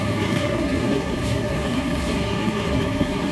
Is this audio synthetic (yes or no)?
yes